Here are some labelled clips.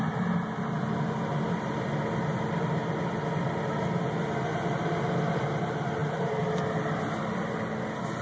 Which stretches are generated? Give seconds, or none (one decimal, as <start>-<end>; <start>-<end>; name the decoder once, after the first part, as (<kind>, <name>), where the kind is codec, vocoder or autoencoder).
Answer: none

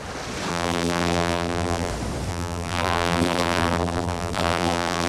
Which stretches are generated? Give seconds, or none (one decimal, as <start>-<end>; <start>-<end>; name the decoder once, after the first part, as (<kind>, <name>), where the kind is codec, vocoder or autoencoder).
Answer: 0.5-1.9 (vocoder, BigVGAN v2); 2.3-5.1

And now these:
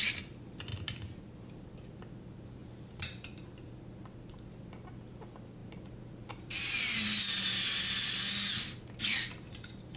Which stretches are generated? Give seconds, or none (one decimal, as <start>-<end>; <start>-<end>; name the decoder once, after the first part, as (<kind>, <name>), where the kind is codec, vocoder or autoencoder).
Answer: 2.6-3.8 (vocoder, BigVGAN v2)